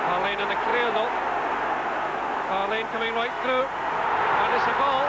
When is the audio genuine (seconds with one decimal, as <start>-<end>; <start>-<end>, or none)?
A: none